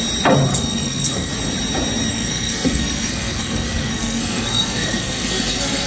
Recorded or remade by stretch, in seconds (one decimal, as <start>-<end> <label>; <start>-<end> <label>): 0.0-0.5 recorded; 0.5-1.3 remade; 1.3-2.1 recorded; 2.1-5.9 remade

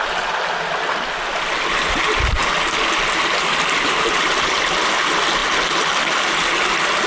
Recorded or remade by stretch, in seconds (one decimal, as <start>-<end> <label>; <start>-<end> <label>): 0.0-7.1 recorded

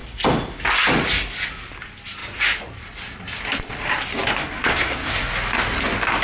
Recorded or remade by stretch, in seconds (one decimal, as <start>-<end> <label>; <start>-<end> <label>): 0.0-4.4 recorded; 4.4-5.2 remade; 5.2-6.2 recorded

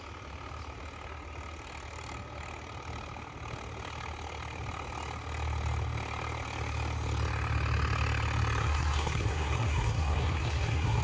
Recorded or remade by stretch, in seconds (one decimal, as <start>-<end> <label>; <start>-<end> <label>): 0.0-8.6 recorded; 8.6-11.0 remade